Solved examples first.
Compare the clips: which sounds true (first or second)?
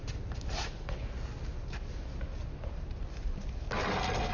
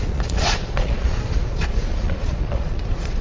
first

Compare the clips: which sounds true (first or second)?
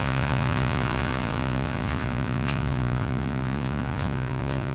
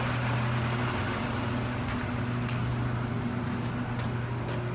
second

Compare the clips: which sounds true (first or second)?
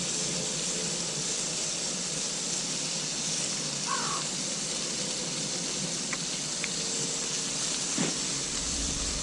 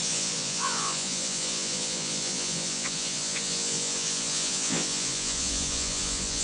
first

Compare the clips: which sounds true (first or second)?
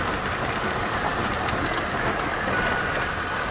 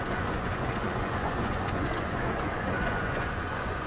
first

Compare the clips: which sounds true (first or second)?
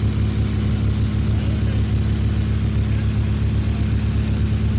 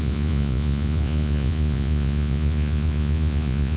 first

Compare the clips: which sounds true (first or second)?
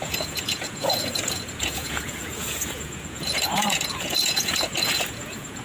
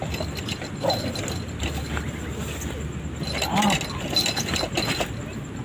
second